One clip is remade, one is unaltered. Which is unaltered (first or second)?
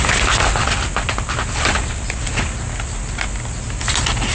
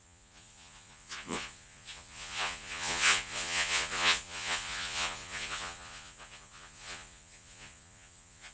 first